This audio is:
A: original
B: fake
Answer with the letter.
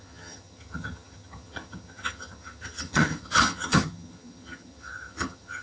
B